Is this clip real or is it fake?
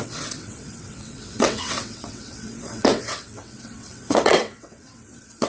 fake